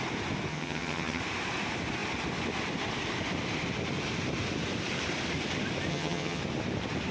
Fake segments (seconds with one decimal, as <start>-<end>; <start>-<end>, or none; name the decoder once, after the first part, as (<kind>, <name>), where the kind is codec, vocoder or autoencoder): 0.5-1.2 (vocoder, HiFi-GAN); 5.9-6.4